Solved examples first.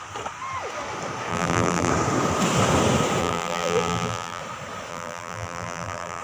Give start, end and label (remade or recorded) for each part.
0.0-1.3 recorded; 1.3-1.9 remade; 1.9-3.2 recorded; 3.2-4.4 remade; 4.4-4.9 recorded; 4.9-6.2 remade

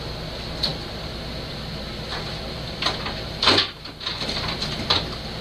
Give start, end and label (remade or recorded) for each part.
0.0-2.1 recorded; 2.1-5.4 remade

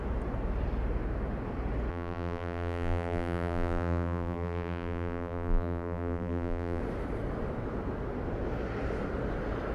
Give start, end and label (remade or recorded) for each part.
0.0-1.9 recorded; 1.9-6.8 remade; 6.8-9.7 recorded

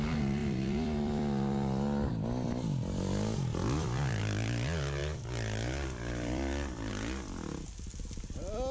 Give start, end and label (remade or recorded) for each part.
0.0-0.4 recorded; 0.4-1.2 remade; 1.2-3.6 recorded; 3.6-4.2 remade; 4.2-5.0 recorded; 5.0-6.9 remade; 6.9-8.7 recorded

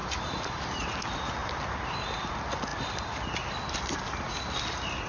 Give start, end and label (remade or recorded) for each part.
0.0-0.7 remade; 0.7-2.7 recorded; 2.7-5.1 remade

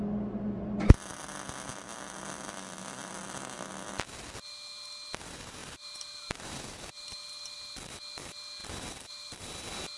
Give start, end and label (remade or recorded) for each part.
0.0-1.9 recorded; 1.9-3.1 remade; 3.1-5.6 recorded; 5.6-7.7 remade; 7.7-8.6 recorded; 8.6-9.3 remade; 9.3-10.0 recorded

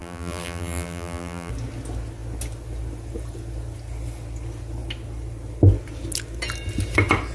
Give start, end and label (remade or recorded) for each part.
0.0-1.5 remade; 1.5-7.3 recorded

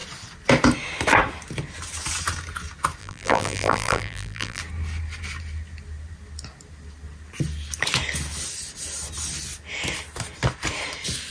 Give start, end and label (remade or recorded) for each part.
0.0-3.0 recorded; 3.0-4.6 remade; 4.6-11.3 recorded